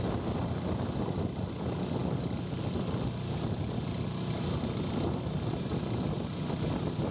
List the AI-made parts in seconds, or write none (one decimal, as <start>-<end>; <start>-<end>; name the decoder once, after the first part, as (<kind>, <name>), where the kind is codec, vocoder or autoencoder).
none